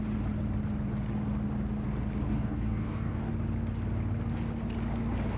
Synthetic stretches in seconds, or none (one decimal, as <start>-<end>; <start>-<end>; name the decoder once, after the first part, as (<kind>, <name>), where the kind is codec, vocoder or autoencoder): 2.3-3.3 (codec, DAC)